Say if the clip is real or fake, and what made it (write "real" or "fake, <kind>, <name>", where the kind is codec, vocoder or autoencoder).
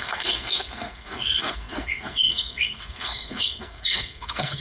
fake, codec, SNAC